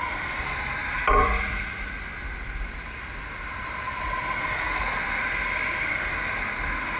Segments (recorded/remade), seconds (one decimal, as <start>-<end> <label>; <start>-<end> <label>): 0.0-7.0 recorded